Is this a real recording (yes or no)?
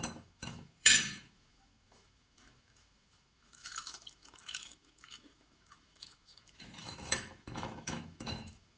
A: no